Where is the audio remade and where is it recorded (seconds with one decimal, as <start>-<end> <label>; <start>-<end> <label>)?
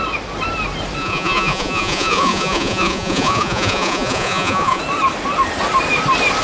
0.0-1.0 recorded; 1.0-4.8 remade; 4.8-6.4 recorded